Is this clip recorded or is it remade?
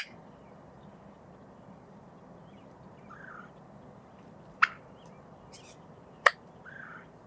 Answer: remade